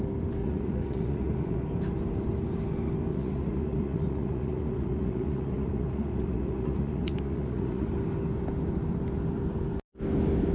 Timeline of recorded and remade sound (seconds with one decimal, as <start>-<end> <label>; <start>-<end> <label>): 0.0-0.4 recorded; 0.4-1.6 remade; 1.6-3.1 recorded; 3.1-7.9 remade; 7.9-10.5 recorded